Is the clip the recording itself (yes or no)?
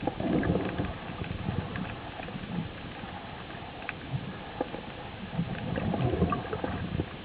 yes